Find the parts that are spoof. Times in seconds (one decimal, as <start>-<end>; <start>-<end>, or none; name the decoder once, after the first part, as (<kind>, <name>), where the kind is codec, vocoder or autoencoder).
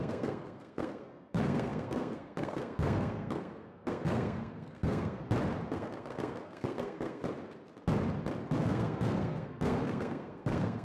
0.0-5.2 (codec, SNAC); 5.7-7.2; 8.5-10.8